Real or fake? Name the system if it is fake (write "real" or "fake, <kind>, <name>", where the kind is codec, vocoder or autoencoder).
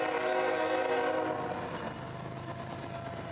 real